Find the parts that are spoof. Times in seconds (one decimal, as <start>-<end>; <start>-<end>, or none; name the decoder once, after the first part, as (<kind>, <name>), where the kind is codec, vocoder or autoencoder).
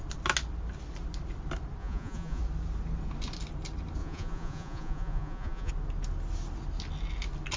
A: 1.8-2.4 (vocoder, Vocos); 4.0-5.7